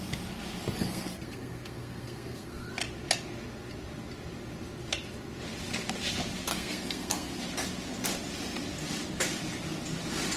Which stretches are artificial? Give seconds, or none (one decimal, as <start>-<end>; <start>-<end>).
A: 0.8-2.7; 6.5-7.3